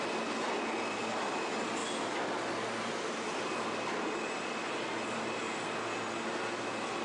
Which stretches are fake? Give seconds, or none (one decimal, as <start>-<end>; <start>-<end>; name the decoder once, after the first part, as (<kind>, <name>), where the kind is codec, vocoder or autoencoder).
none